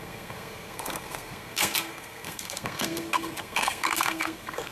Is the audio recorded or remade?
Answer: remade